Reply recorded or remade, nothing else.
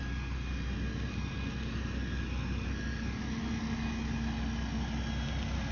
recorded